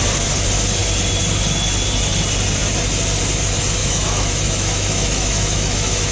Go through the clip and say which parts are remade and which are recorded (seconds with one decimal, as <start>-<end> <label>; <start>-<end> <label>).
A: 0.0-3.8 recorded; 3.8-6.1 remade

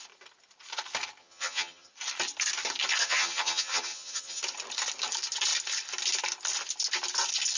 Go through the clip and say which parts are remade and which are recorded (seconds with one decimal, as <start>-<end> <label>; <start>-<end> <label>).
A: 0.0-1.2 recorded; 1.2-1.9 remade; 1.9-3.0 recorded; 3.0-4.4 remade; 4.4-7.6 recorded

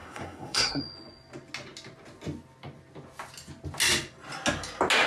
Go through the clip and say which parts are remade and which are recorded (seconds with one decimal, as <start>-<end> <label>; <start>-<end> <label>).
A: 0.0-0.8 remade; 0.8-5.1 recorded

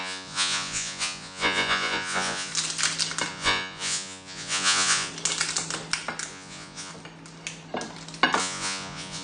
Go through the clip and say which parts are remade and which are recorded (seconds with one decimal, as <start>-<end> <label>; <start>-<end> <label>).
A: 0.0-2.5 remade; 2.5-3.3 recorded; 3.3-5.1 remade; 5.1-6.3 recorded; 6.3-6.9 remade; 6.9-8.4 recorded; 8.4-9.2 remade

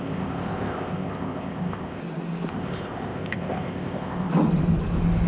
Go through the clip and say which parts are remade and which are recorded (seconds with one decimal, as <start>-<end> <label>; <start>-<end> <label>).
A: 0.0-2.0 remade; 2.0-2.5 recorded; 2.5-4.3 remade; 4.3-5.3 recorded

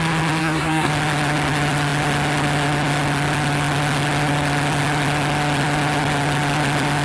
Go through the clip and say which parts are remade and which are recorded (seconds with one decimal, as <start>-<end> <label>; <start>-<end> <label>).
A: 0.0-0.4 recorded; 0.4-0.9 remade; 0.9-7.0 recorded